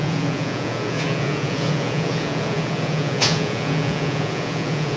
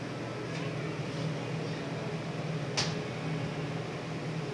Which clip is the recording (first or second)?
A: second